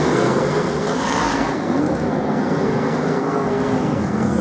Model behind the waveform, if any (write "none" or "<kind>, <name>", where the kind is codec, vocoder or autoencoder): codec, SNAC